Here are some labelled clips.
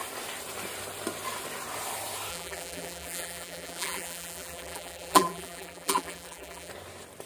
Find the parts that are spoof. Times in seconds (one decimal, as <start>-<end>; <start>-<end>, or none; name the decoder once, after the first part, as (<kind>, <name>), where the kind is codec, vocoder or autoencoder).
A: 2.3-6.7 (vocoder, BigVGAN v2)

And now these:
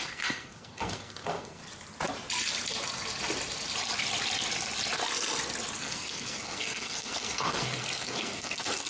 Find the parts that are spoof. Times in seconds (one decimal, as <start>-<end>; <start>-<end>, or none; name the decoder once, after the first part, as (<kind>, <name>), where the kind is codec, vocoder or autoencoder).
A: 0.0-1.6 (codec, SNAC); 5.8-8.9

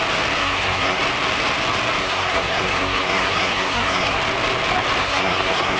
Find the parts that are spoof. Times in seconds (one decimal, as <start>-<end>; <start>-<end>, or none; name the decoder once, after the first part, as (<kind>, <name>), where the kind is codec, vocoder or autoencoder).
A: 0.4-1.0 (codec, SNAC); 2.0-4.2; 5.0-5.8